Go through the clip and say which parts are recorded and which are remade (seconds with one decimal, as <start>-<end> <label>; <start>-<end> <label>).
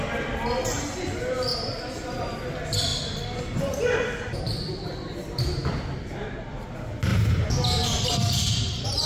0.0-9.1 recorded